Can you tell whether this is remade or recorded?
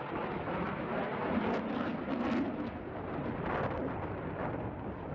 recorded